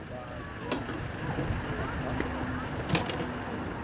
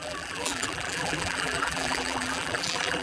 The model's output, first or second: second